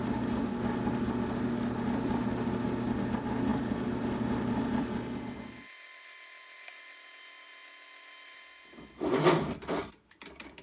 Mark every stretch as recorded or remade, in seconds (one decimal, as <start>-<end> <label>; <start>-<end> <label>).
0.0-10.6 recorded